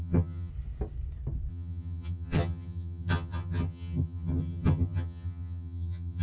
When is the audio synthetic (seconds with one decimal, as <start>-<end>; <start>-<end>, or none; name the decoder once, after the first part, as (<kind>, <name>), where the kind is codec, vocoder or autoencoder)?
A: 0.0-0.5 (vocoder, HiFi-GAN); 1.5-6.2